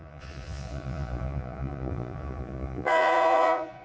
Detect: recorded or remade remade